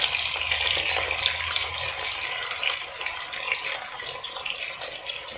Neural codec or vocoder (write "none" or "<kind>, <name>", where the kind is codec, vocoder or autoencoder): none